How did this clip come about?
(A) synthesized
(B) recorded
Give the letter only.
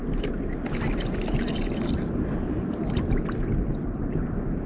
B